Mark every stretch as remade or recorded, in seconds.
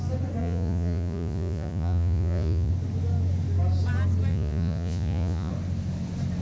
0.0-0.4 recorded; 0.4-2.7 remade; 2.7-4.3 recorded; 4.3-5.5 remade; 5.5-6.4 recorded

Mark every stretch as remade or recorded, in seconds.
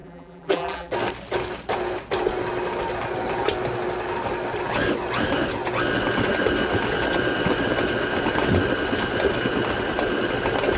0.0-0.9 remade; 0.9-10.8 recorded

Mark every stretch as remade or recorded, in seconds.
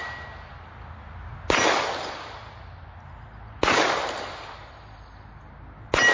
0.0-6.1 recorded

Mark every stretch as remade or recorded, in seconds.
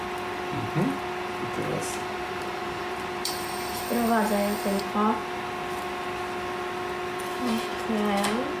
0.0-1.7 recorded; 1.7-3.8 remade; 3.8-8.6 recorded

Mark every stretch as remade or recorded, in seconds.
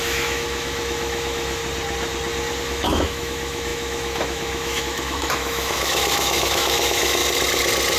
0.0-1.6 remade; 1.6-2.6 recorded; 2.6-7.2 remade; 7.2-8.0 recorded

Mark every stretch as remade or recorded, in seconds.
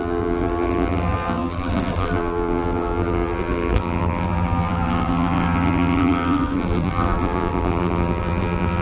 0.0-8.8 remade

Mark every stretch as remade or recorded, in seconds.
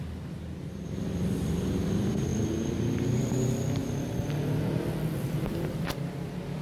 0.0-2.3 remade; 2.3-3.2 recorded; 3.2-3.8 remade; 3.8-4.6 recorded; 4.6-6.6 remade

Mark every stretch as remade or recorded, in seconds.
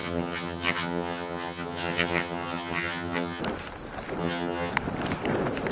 0.0-3.4 remade; 3.4-4.2 recorded; 4.2-4.7 remade; 4.7-5.7 recorded